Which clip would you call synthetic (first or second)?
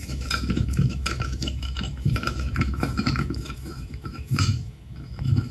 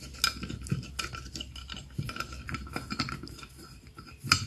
first